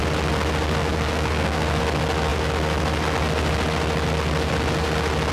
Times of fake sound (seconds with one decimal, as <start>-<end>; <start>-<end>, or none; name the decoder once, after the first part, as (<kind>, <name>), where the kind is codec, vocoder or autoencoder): 0.8-1.8 (codec, DAC)